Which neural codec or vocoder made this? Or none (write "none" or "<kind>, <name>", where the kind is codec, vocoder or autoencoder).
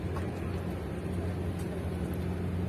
none